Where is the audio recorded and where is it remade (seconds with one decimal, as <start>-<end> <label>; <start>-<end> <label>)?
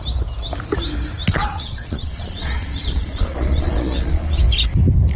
0.0-1.3 recorded; 1.3-4.4 remade; 4.4-5.2 recorded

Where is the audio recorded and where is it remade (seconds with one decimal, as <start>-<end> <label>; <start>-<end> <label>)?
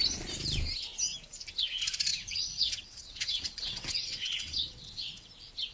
0.0-2.1 recorded; 2.1-5.3 remade; 5.3-5.7 recorded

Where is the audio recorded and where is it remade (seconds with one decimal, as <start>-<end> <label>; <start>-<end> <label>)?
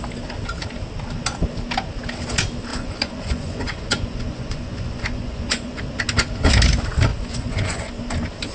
0.0-2.7 recorded; 2.7-5.8 remade; 5.8-7.1 recorded; 7.1-7.9 remade; 7.9-8.5 recorded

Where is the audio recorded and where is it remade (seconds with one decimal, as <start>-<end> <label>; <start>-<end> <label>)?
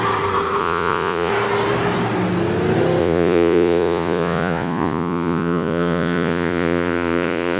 0.0-0.6 recorded; 0.6-1.3 remade; 1.3-3.0 recorded; 3.0-7.6 remade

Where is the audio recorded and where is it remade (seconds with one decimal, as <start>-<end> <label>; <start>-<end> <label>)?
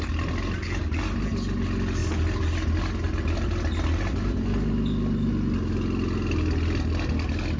0.0-7.6 recorded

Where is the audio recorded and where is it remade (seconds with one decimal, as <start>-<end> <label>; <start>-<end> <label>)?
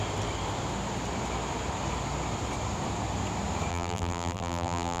0.0-3.7 recorded; 3.7-5.0 remade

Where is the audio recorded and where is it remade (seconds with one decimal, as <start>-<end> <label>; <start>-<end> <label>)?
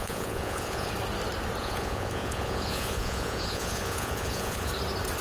0.0-0.9 remade; 0.9-1.6 recorded; 1.6-4.7 remade; 4.7-5.2 recorded